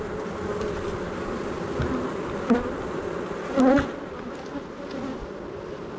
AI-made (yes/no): no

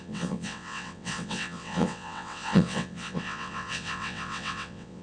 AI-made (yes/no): yes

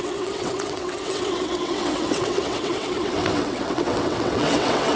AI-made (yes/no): yes